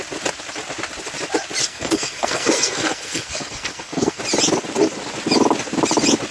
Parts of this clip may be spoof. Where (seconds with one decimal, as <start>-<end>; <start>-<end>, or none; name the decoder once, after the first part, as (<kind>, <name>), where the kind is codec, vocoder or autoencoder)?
1.6-4.2 (codec, SNAC)